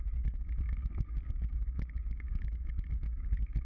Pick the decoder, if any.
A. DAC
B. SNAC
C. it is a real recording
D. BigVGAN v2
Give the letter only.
A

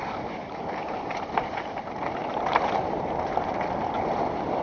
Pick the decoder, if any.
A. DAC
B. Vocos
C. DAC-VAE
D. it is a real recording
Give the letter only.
D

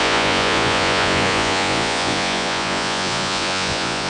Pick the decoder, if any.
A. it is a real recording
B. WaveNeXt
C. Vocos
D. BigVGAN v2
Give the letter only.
C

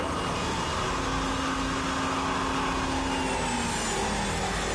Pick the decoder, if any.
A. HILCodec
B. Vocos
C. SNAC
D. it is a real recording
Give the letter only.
D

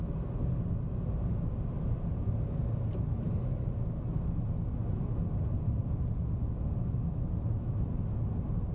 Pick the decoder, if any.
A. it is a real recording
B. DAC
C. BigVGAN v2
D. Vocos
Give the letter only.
A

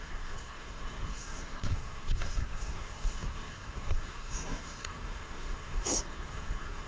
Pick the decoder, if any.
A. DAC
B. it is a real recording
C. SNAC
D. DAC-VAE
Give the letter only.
C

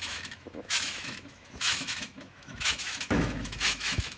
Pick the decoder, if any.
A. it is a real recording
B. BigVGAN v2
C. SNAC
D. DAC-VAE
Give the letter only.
D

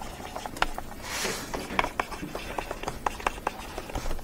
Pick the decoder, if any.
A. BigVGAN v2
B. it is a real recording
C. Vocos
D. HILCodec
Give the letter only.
B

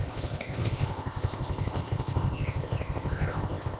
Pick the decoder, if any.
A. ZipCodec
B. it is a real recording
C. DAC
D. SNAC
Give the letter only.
A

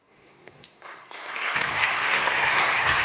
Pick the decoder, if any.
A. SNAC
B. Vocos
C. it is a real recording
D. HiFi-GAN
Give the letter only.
A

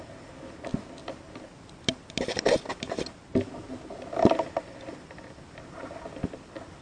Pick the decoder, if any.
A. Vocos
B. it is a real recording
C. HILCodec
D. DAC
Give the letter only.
B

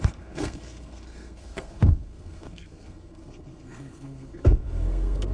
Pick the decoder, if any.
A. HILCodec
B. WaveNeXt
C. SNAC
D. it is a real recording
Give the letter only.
C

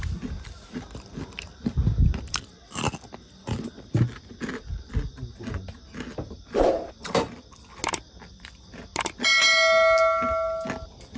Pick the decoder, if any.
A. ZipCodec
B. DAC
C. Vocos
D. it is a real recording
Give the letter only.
D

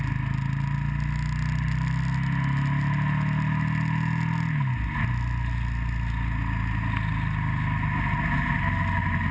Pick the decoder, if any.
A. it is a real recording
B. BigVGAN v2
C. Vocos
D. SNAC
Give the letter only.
A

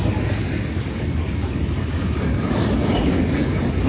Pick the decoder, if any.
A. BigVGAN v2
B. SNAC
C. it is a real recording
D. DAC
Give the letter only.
D